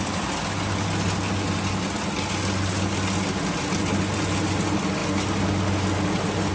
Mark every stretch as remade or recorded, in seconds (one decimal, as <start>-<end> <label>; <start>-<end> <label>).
0.0-6.5 recorded